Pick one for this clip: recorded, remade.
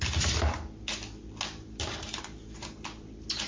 recorded